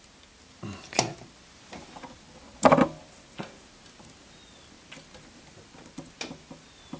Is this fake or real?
real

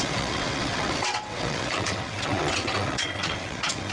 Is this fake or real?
fake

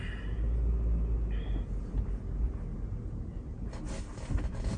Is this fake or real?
real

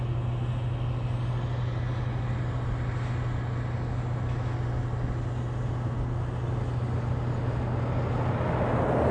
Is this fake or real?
real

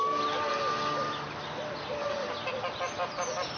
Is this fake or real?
real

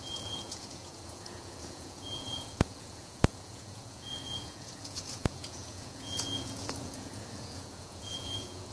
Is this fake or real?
fake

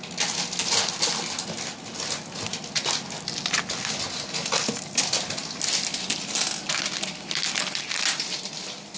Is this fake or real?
real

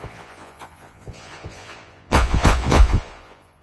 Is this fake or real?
fake